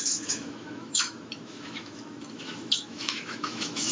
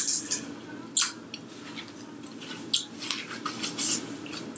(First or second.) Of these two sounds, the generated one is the first